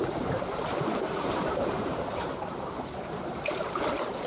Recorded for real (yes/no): no